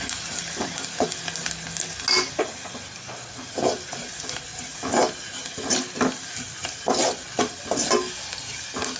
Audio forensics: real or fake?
real